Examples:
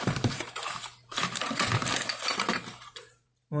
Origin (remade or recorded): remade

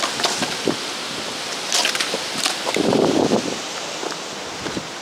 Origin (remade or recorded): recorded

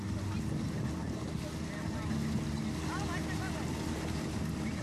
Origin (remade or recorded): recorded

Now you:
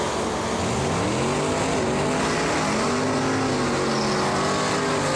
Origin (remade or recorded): recorded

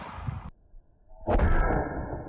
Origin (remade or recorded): recorded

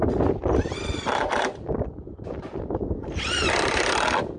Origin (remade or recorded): remade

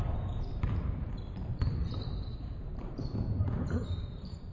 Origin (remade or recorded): remade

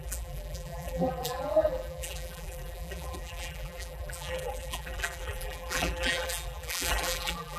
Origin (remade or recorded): remade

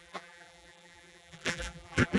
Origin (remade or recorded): remade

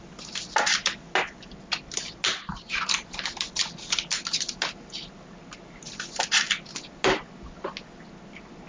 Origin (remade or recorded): recorded